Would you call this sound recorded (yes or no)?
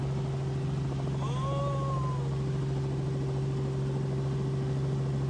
yes